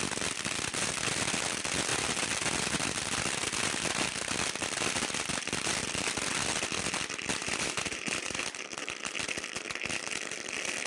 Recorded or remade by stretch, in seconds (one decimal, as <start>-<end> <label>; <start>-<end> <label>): 0.0-7.4 recorded; 7.4-8.4 remade; 8.4-10.9 recorded